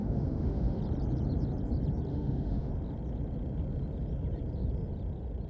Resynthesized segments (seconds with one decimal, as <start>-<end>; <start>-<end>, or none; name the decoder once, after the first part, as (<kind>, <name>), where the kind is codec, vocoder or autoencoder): 0.0-0.8 (autoencoder, DAC-VAE); 2.1-2.7